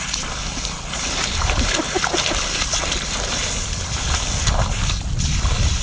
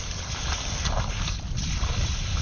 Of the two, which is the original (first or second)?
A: first